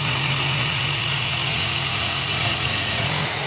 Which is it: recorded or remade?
remade